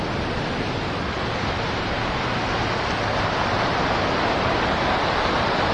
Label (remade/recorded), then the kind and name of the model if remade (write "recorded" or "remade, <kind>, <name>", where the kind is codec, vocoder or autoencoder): recorded